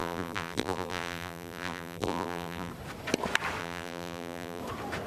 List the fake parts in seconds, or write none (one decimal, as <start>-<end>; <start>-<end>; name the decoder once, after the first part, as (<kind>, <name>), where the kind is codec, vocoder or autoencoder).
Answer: 0.0-2.7 (vocoder, BigVGAN v2); 3.6-4.6